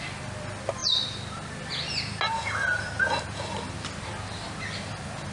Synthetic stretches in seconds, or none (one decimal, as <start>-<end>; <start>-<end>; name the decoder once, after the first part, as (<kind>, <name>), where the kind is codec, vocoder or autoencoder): none